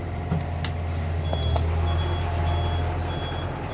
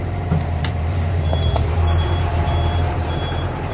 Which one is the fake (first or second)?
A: second